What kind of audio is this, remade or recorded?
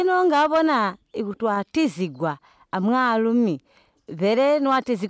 recorded